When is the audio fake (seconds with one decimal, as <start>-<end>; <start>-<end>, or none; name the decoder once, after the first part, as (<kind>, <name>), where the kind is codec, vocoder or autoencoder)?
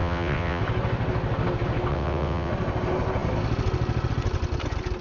0.0-0.6 (vocoder, WaveNeXt); 1.9-2.5